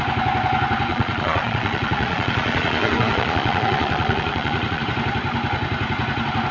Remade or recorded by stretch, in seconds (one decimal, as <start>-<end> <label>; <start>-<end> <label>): 0.0-0.9 recorded; 0.9-4.8 remade; 4.8-6.5 recorded